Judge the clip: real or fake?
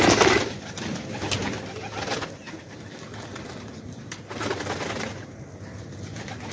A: real